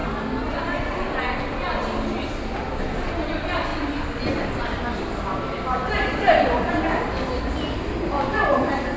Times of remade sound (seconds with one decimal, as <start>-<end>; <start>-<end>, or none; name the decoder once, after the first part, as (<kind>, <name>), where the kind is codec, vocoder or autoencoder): none